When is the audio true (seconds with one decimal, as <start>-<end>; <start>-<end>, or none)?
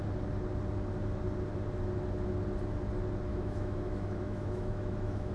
0.0-3.3